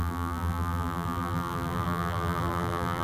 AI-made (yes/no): yes